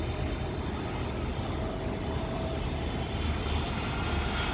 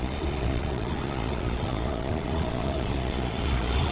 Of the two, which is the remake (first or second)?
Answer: second